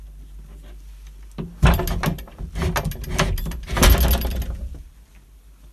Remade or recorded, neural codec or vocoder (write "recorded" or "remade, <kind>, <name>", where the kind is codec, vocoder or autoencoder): recorded